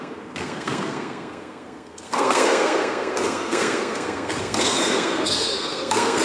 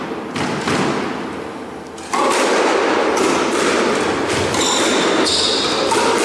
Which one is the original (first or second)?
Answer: second